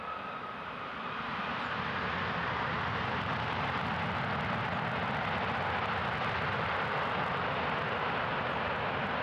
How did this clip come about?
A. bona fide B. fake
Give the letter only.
A